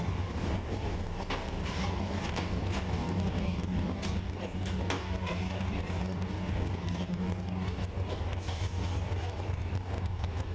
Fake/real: fake